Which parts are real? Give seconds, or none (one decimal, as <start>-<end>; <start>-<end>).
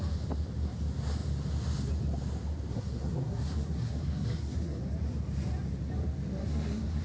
0.0-2.7; 4.8-6.4